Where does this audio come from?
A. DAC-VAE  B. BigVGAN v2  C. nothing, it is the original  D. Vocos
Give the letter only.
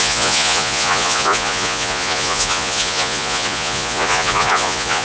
D